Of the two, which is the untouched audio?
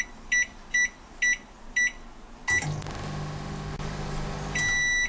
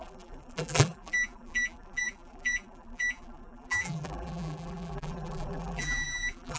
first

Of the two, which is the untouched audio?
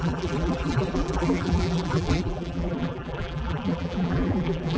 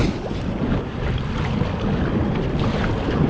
second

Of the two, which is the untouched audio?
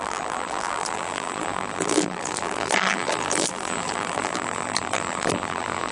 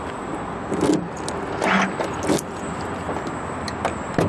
second